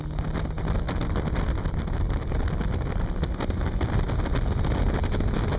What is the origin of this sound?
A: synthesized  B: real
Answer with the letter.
B